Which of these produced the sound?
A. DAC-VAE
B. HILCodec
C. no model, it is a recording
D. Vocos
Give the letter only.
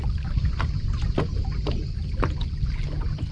C